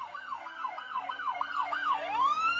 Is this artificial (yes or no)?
yes